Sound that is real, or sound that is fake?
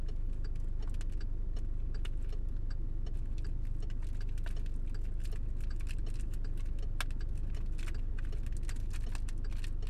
real